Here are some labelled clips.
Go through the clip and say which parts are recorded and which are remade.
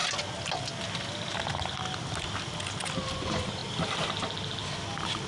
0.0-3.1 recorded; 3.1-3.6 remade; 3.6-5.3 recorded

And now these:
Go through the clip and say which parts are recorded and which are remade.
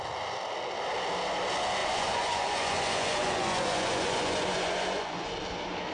0.0-1.8 recorded; 1.8-5.3 remade; 5.3-5.9 recorded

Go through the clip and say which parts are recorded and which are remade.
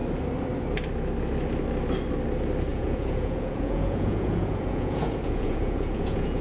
0.0-2.7 recorded; 2.7-6.4 remade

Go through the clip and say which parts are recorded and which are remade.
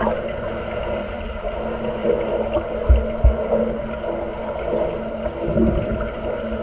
0.0-1.0 recorded; 1.0-1.6 remade; 1.6-6.6 recorded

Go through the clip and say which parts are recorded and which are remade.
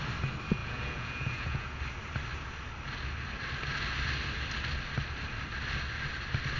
0.0-0.6 recorded; 0.6-1.8 remade; 1.8-6.6 recorded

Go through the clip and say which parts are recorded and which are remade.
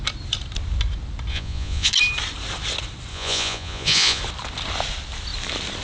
0.0-1.3 recorded; 1.3-1.9 remade; 1.9-3.1 recorded; 3.1-4.2 remade; 4.2-5.8 recorded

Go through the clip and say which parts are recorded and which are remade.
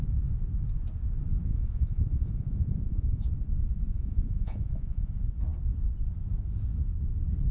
0.0-1.5 recorded; 1.5-3.3 remade; 3.3-3.9 recorded; 3.9-5.1 remade; 5.1-7.5 recorded